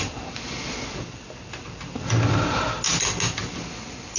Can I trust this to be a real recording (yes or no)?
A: yes